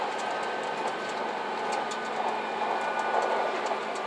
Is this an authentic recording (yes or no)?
yes